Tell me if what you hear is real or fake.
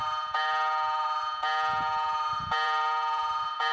fake